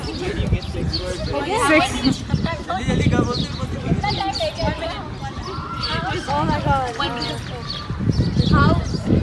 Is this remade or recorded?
recorded